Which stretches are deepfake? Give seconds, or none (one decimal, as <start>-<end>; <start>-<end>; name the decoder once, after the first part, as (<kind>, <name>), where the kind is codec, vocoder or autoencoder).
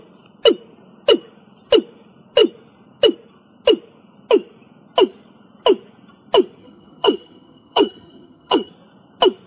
6.6-8.7 (vocoder, HiFi-GAN)